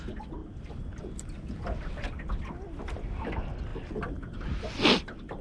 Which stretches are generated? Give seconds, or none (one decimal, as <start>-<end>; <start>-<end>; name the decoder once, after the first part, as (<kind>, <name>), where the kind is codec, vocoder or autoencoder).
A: none